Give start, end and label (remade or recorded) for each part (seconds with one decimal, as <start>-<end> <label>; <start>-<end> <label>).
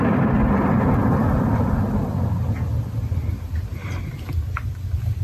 0.0-5.2 recorded